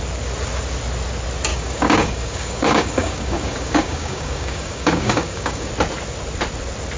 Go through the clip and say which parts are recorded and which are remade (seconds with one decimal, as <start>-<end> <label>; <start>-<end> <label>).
0.0-1.5 recorded; 1.5-5.7 remade; 5.7-7.0 recorded